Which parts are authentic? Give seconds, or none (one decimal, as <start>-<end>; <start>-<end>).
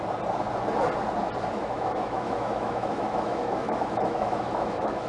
0.0-1.6